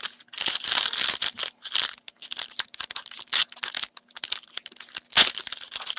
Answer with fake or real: real